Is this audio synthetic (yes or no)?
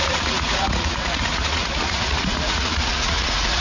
yes